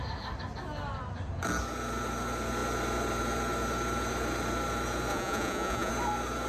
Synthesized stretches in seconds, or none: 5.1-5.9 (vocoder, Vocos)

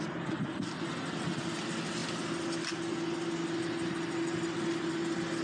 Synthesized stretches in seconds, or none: none

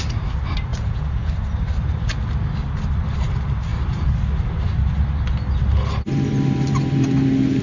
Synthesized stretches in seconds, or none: 0.7-1.3 (vocoder, Vocos)

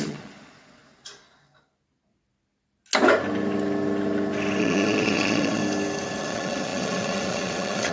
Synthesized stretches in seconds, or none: 0.0-0.8 (vocoder, Vocos); 4.6-5.6; 6.2-7.9

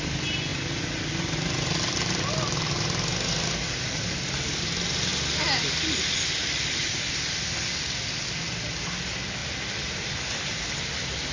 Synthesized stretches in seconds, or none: none